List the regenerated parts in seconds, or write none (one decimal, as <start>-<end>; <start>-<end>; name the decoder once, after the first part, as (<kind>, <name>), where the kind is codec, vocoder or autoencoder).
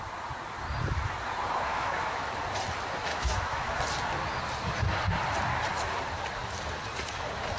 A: 1.7-2.3 (autoencoder, DAC-VAE); 3.1-3.8